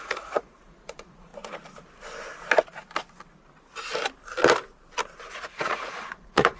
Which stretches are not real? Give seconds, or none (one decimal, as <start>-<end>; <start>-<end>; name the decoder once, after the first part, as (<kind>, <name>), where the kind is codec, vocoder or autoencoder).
0.0-1.3 (vocoder, Vocos); 5.3-6.6